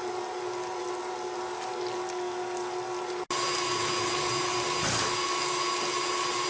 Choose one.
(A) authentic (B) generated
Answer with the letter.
A